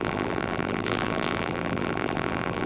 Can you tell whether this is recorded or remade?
remade